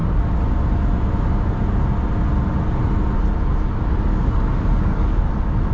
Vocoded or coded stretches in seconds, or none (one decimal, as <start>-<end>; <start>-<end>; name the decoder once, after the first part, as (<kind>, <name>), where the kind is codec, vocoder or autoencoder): 4.1-5.2 (codec, DAC)